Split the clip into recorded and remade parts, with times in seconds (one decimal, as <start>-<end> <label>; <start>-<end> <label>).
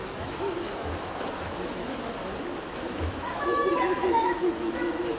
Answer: 0.0-5.2 remade